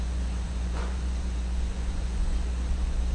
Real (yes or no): no